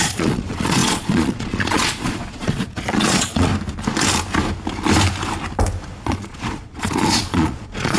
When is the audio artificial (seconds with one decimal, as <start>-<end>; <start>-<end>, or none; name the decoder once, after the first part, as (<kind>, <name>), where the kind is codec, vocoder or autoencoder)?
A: 0.0-3.5 (vocoder, Vocos); 6.0-8.0